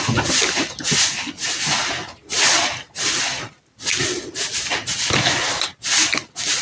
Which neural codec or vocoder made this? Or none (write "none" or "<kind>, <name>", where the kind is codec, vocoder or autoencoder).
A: none